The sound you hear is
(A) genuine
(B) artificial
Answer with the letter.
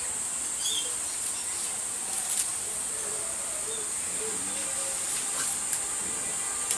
A